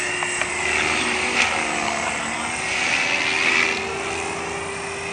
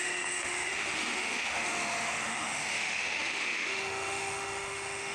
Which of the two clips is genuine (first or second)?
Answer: first